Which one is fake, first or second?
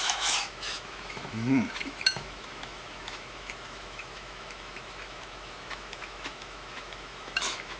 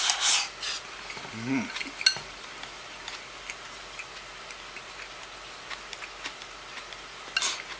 first